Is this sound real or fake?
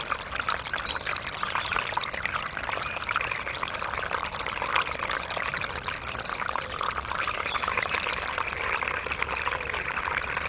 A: fake